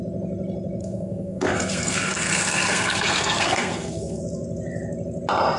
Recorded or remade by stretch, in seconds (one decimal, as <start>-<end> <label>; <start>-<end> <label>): 0.0-0.8 recorded; 0.8-4.2 remade; 4.2-5.6 recorded